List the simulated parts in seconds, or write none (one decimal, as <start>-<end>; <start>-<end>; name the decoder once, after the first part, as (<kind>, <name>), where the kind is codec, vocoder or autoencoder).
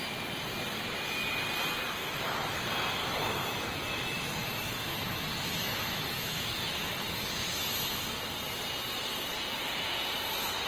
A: 2.0-2.6 (autoencoder, DAC-VAE); 3.0-8.0